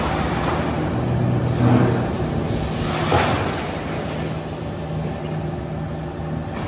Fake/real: real